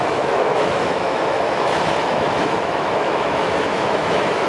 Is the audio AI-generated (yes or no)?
yes